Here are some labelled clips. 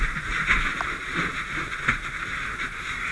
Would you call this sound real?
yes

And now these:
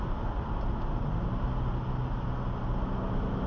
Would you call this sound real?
yes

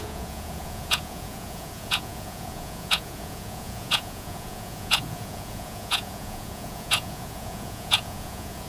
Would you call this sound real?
no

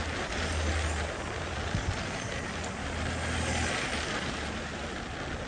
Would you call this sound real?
yes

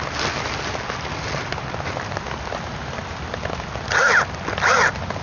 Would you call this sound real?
yes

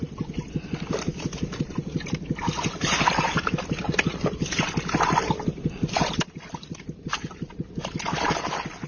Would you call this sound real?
yes